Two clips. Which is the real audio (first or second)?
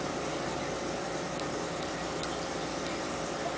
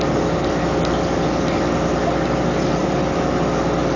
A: second